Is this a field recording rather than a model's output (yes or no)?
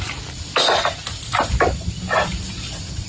yes